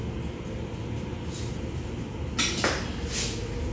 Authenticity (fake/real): real